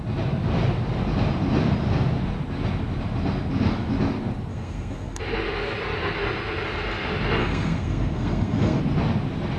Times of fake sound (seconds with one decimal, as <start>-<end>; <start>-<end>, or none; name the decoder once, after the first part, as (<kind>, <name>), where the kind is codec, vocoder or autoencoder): 4.5-5.2 (codec, SNAC); 7.4-8.8